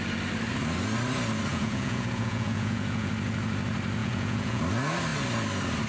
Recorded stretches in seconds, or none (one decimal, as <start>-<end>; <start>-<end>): 0.0-1.5; 3.1-4.0; 4.6-5.9